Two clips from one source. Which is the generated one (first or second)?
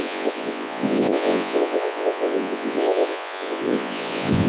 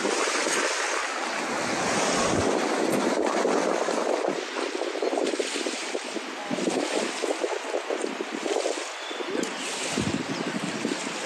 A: first